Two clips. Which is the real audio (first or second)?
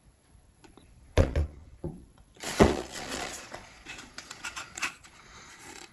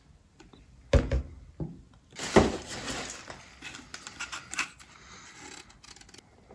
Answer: second